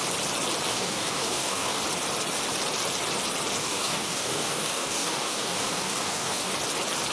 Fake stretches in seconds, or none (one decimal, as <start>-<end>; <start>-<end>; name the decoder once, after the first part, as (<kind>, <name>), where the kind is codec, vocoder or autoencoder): 0.7-1.8 (codec, DAC); 3.6-6.5